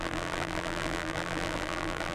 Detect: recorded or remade remade